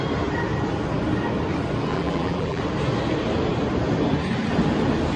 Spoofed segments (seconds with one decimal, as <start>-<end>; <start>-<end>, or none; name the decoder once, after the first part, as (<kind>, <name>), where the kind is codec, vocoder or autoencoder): 1.9-2.6 (vocoder, BigVGAN v2)